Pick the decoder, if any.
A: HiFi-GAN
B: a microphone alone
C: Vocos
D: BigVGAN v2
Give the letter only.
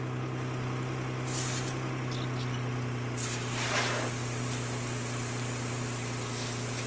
B